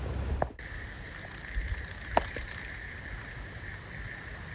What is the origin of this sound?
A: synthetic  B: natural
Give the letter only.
B